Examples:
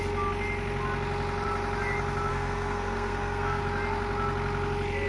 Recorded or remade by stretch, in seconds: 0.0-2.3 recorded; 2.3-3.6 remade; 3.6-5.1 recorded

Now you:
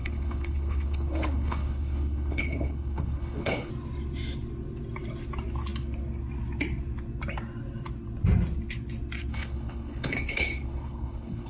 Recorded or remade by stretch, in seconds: 0.0-3.7 remade; 3.7-9.3 recorded; 9.3-11.5 remade

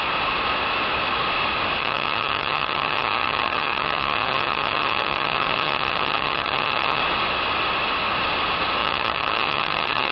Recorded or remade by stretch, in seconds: 0.0-1.8 recorded; 1.8-7.0 remade; 7.0-8.8 recorded; 8.8-10.1 remade

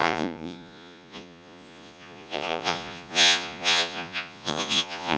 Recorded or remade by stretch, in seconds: 0.0-5.2 remade